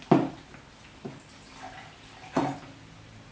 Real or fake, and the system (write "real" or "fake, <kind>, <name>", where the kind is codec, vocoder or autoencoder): real